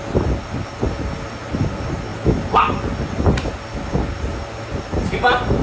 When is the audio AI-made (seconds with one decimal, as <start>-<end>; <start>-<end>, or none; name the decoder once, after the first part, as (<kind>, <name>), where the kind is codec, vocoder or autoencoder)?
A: none